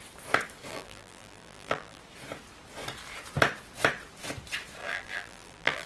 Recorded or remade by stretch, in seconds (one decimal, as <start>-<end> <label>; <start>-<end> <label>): 0.0-0.7 recorded; 0.7-2.0 remade; 2.0-4.8 recorded; 4.8-5.9 remade